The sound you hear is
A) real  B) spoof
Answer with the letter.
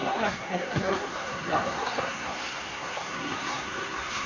B